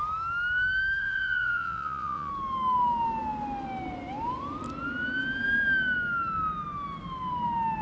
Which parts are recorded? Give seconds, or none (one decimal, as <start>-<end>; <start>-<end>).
0.0-1.0; 2.3-7.8